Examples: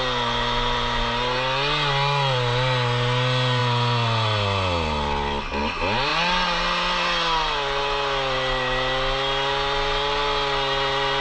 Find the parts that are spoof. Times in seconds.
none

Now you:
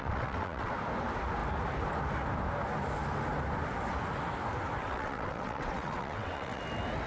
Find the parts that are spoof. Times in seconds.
0.0-0.7 (vocoder, WaveNeXt); 4.8-6.6

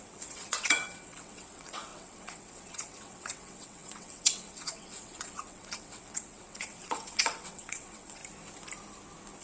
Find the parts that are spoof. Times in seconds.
0.0-8.2 (vocoder, WaveNeXt)